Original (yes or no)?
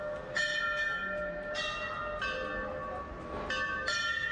yes